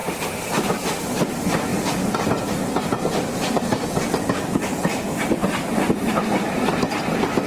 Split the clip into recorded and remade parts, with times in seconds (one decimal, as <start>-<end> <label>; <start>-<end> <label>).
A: 0.0-7.5 recorded